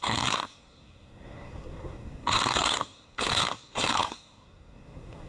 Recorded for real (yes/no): no